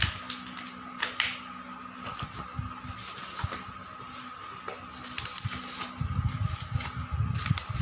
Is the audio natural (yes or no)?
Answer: yes